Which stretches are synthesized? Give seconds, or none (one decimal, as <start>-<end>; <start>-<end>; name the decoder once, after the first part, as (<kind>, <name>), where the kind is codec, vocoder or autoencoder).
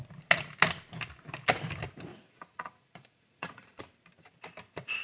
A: 2.1-3.8 (vocoder, Vocos)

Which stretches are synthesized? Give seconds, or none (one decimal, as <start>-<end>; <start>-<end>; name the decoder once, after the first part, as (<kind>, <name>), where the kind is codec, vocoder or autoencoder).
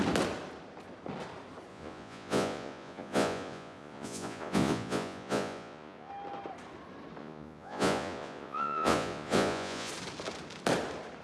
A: 1.7-6.1 (vocoder, Vocos); 7.2-9.9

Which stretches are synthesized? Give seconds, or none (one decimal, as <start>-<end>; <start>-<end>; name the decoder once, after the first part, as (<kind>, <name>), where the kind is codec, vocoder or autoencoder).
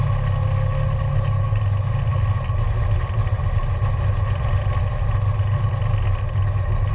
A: none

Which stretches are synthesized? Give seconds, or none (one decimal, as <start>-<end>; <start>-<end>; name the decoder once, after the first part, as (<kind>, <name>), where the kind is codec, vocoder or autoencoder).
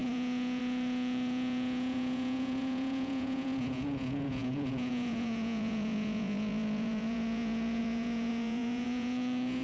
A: 0.0-9.6 (vocoder, Vocos)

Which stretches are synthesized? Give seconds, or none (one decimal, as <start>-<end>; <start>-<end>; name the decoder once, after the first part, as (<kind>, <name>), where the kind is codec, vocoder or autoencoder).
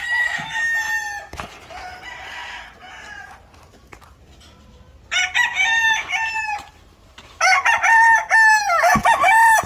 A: none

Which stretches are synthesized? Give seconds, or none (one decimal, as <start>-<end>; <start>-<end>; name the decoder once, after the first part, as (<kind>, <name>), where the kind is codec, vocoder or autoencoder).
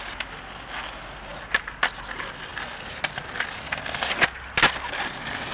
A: none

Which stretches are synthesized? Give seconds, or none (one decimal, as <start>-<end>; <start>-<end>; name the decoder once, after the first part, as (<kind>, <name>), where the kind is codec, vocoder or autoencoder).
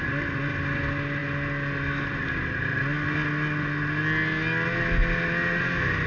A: none